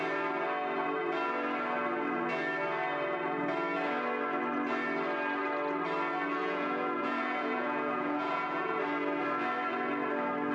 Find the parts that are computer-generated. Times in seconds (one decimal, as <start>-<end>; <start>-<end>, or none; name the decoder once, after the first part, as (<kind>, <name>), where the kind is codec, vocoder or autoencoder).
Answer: 6.4-8.8 (vocoder, Vocos)